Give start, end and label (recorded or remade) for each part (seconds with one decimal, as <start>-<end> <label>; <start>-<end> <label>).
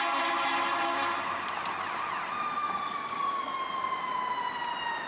0.0-2.6 recorded; 2.6-3.6 remade; 3.6-5.1 recorded